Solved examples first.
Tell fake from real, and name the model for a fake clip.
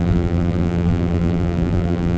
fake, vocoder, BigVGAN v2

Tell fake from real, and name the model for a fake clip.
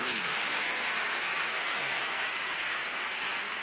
fake, codec, SNAC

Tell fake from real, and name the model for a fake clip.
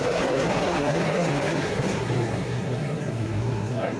fake, codec, SNAC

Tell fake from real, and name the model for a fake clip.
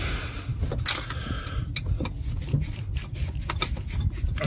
real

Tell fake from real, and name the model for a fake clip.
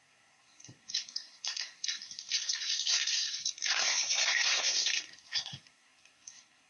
fake, codec, SNAC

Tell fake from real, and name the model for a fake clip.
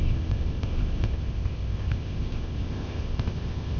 fake, codec, ZipCodec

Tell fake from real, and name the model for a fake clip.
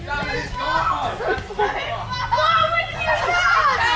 real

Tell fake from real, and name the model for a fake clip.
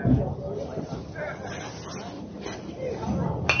real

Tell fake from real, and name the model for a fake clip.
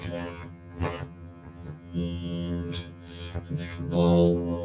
fake, vocoder, HiFi-GAN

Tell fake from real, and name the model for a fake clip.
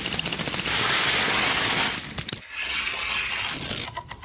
real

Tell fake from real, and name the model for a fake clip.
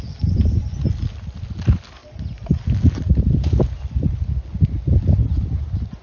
real